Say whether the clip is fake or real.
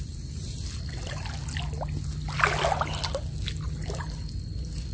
real